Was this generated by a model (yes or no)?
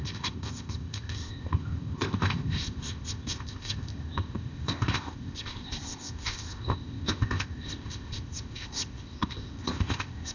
yes